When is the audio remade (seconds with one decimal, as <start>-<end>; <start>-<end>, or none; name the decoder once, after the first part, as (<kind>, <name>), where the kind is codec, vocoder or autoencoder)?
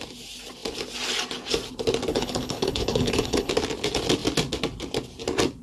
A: 2.1-3.5 (codec, HILCodec)